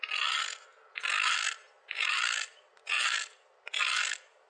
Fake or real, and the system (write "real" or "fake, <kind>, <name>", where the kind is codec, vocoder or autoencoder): real